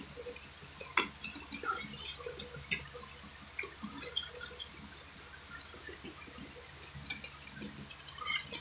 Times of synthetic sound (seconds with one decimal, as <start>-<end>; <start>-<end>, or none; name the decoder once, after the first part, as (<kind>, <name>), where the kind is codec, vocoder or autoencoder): none